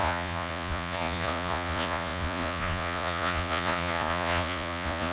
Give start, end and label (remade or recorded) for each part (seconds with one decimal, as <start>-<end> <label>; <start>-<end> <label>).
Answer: 0.0-5.1 remade